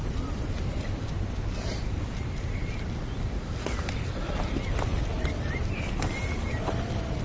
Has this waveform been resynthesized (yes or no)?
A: yes